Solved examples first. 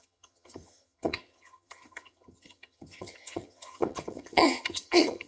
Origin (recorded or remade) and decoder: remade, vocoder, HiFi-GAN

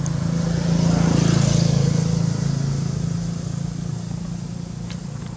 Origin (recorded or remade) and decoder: recorded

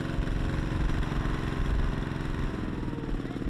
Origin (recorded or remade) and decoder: recorded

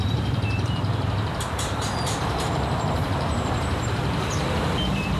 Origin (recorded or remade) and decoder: remade, vocoder, BigVGAN v2